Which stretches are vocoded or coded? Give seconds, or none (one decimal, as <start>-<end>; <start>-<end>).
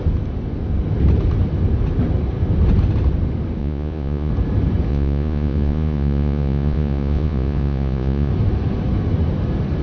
3.6-4.3; 4.9-8.3